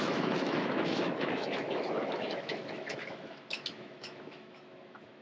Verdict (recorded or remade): remade